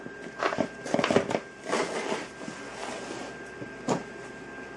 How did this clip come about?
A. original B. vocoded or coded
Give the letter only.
A